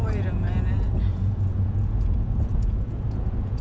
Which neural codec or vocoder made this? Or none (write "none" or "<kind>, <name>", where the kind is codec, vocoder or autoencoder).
vocoder, Vocos